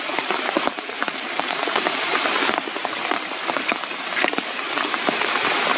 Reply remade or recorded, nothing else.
remade